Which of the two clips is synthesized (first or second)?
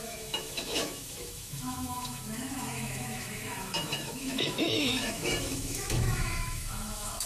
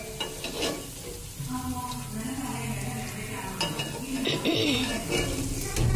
first